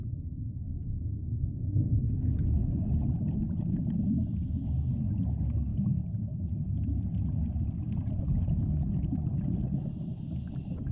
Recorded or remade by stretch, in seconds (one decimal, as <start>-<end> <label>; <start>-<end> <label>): 0.0-2.0 remade; 2.0-10.9 recorded

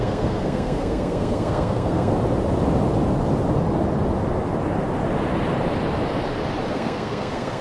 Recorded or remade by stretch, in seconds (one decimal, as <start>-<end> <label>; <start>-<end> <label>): 0.0-2.1 remade; 2.1-6.7 recorded; 6.7-7.6 remade

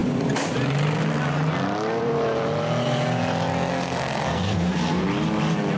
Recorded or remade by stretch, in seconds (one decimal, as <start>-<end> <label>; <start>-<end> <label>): 0.0-3.7 recorded; 3.7-5.0 remade; 5.0-5.8 recorded

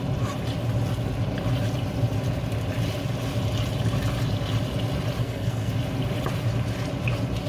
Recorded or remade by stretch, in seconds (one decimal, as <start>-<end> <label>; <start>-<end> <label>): 0.0-5.2 recorded; 5.2-5.7 remade; 5.7-7.5 recorded

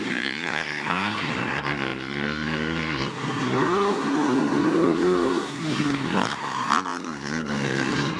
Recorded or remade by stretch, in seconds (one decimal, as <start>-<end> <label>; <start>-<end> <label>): 0.0-8.2 remade

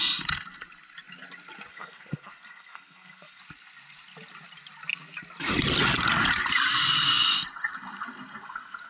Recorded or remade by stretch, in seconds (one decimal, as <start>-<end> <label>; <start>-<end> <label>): 0.0-1.7 recorded; 1.7-3.4 remade; 3.4-8.9 recorded

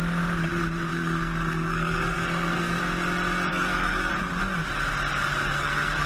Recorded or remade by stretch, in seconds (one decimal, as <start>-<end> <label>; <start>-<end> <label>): 0.0-0.9 recorded; 0.9-2.8 remade; 2.8-3.5 recorded; 3.5-4.1 remade; 4.1-5.5 recorded; 5.5-6.1 remade